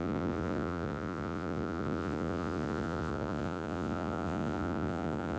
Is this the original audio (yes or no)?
no